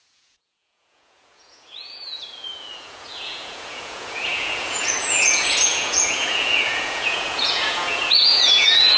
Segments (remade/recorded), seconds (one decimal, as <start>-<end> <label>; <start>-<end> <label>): 0.0-9.0 remade